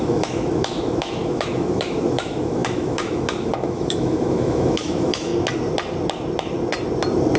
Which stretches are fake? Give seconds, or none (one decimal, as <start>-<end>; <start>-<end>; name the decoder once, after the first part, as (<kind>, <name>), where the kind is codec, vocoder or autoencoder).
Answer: 0.0-5.3 (autoencoder, DAC-VAE)